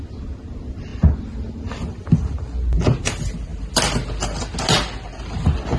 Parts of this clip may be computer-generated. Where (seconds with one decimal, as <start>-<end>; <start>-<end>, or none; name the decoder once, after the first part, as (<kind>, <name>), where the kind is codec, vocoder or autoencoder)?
none